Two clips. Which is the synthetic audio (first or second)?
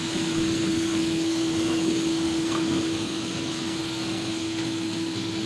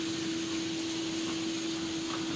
first